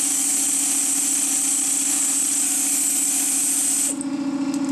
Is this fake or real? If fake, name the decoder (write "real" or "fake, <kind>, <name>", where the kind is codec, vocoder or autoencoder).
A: real